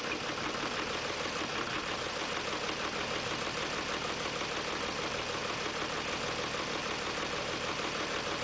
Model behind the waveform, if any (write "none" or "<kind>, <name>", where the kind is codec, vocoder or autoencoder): none